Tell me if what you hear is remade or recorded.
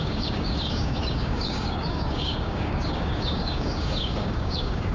remade